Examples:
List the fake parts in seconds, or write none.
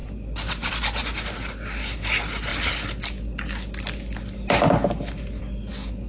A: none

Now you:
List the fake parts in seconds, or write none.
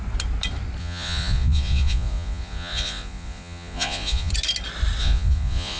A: 0.8-4.3 (vocoder, Vocos); 5.0-5.8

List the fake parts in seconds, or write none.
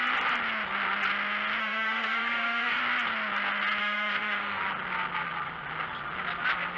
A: 1.6-2.8 (autoencoder, DAC-VAE); 3.8-4.6